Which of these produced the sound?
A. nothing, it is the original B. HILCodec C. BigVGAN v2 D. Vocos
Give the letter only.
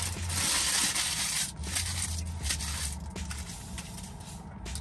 A